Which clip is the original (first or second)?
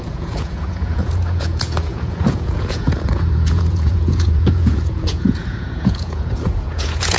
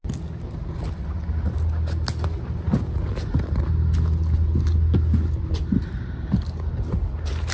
second